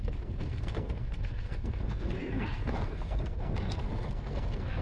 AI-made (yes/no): yes